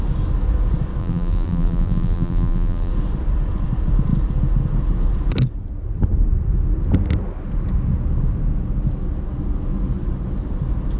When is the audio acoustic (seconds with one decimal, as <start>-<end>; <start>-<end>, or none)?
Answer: 0.0-1.0; 2.9-11.0